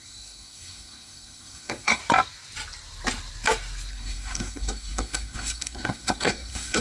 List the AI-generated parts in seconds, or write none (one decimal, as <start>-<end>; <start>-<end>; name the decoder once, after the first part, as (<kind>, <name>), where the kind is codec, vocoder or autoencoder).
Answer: 0.0-2.0 (codec, SNAC); 3.9-6.8